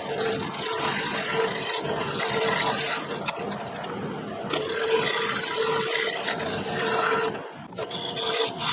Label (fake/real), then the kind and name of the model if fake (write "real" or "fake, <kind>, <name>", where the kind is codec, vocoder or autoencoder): real